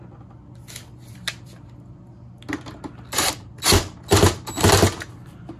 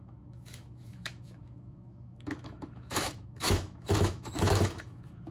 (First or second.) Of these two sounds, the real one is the first